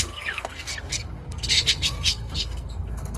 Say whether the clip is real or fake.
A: fake